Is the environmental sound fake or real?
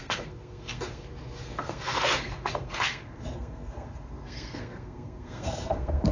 fake